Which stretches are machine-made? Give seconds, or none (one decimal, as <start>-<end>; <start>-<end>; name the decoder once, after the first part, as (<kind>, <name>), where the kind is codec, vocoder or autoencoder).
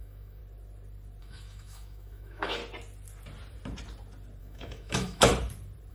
0.0-0.4 (autoencoder, DAC-VAE); 1.2-2.6; 4.4-5.3